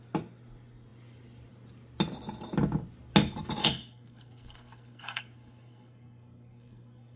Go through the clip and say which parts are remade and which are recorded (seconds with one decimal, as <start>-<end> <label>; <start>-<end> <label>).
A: 0.0-3.6 recorded; 3.6-7.2 remade